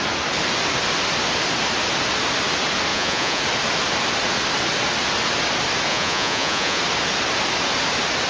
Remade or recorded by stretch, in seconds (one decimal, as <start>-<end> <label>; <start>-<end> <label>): 0.0-2.9 recorded; 2.9-3.4 remade; 3.4-5.9 recorded; 5.9-6.8 remade; 6.8-8.3 recorded